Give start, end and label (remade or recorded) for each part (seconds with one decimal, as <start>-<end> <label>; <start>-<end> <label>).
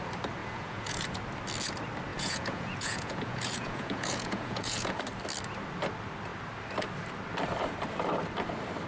0.0-0.4 recorded; 0.4-1.2 remade; 1.2-2.1 recorded; 2.1-5.0 remade; 5.0-8.9 recorded